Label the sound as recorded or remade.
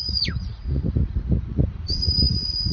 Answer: remade